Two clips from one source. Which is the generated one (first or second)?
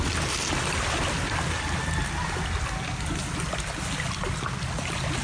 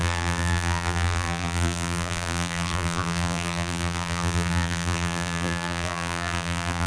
second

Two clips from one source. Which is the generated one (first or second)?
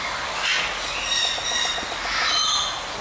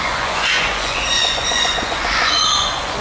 second